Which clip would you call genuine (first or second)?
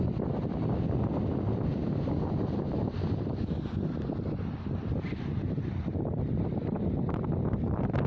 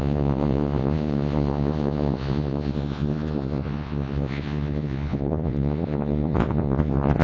first